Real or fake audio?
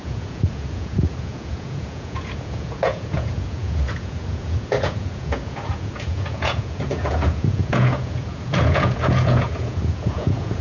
fake